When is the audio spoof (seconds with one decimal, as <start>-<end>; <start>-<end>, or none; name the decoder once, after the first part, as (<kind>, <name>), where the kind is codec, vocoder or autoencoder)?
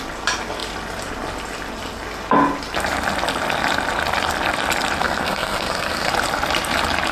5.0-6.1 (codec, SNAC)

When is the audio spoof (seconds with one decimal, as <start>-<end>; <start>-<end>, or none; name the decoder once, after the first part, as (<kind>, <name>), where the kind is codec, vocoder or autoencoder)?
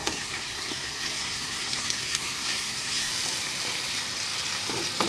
0.0-3.1 (codec, SNAC)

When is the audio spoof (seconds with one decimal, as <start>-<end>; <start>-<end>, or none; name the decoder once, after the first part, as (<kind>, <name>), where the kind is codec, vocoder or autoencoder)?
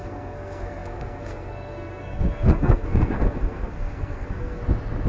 0.0-4.6 (codec, SNAC)